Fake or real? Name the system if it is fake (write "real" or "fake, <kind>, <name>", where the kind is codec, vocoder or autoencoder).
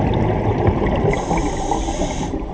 real